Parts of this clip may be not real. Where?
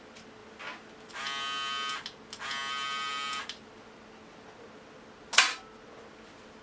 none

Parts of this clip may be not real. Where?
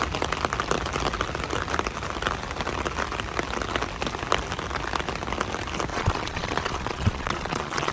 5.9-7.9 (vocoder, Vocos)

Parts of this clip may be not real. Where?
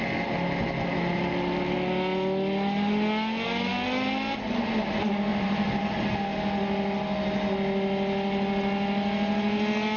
5.3-6.0 (vocoder, BigVGAN v2)